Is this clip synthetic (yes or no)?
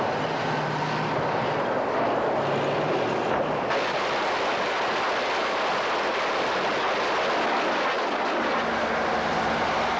no